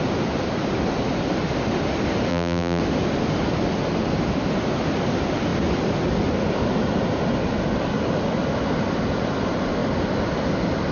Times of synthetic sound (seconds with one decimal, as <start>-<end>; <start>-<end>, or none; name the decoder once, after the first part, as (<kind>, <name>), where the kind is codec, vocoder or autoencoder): 2.3-2.8 (vocoder, BigVGAN v2)